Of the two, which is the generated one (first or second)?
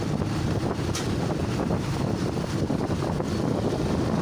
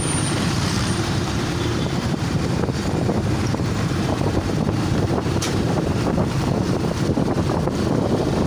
second